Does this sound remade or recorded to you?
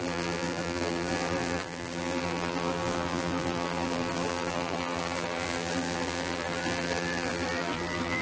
remade